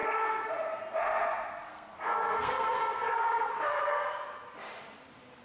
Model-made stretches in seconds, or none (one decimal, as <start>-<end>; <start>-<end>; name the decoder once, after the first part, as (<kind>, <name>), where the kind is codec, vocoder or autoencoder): 0.0-0.5 (codec, SNAC); 1.7-4.2